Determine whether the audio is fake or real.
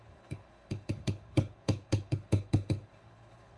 fake